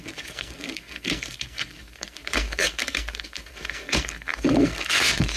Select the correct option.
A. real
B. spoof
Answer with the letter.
B